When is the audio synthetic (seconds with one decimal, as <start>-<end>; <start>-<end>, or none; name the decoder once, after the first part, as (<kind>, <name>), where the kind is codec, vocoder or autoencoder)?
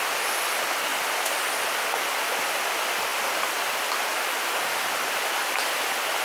none